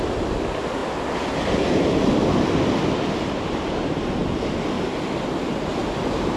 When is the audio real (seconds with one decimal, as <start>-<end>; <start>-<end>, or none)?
0.0-6.4